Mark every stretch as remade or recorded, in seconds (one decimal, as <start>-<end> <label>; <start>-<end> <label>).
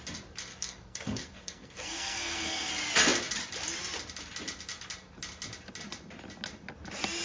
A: 0.0-0.5 recorded; 0.5-2.7 remade; 2.7-7.2 recorded